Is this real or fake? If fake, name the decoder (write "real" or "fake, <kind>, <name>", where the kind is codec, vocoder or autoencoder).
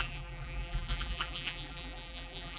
fake, vocoder, BigVGAN v2